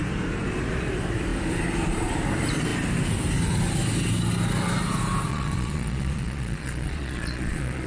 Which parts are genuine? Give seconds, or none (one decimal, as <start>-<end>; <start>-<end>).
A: 0.0-5.3